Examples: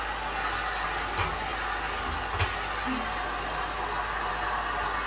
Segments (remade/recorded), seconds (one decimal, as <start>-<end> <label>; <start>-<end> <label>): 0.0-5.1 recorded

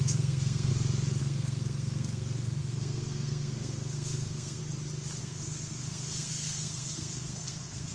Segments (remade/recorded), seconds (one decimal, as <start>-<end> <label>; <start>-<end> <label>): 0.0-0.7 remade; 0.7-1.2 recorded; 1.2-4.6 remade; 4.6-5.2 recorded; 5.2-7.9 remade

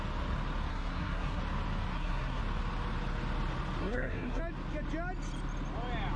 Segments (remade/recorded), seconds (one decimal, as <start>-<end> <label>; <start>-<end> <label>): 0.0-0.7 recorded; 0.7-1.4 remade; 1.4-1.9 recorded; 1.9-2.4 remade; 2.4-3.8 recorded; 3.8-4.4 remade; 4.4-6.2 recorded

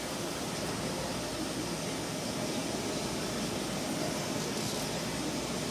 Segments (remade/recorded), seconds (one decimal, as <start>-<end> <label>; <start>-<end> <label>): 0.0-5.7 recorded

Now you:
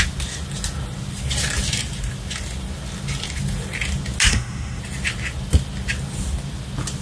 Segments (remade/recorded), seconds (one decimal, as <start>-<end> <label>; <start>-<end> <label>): 0.0-4.3 recorded; 4.3-4.8 remade; 4.8-7.0 recorded

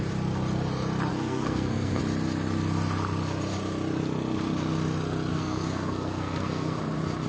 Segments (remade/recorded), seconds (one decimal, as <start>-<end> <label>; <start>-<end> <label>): 0.0-1.1 recorded; 1.1-2.0 remade; 2.0-5.3 recorded; 5.3-6.8 remade; 6.8-7.3 recorded